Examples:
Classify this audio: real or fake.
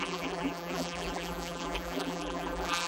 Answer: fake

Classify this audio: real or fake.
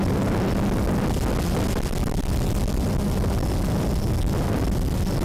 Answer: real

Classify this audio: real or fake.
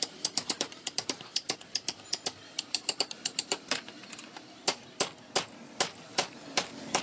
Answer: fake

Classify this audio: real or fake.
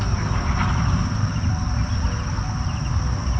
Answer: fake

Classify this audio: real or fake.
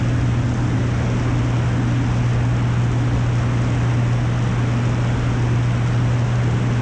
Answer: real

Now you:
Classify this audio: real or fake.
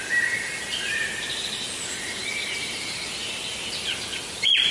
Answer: fake